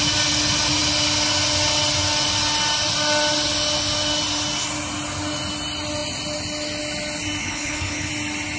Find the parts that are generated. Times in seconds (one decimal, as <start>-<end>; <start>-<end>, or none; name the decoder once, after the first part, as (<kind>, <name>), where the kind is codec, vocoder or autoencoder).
7.4-8.1 (codec, HILCodec)